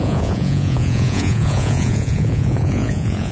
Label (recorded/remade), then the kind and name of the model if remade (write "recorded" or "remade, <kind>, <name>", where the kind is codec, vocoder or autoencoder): remade, vocoder, Vocos